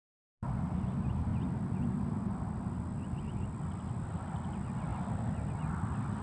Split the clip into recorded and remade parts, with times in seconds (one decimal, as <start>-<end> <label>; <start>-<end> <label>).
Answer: 0.0-6.2 recorded